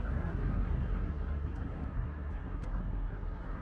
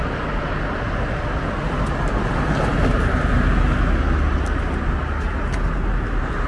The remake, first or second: first